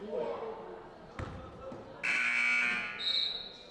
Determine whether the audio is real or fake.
real